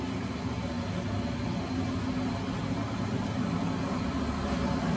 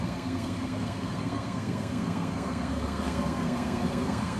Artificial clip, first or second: second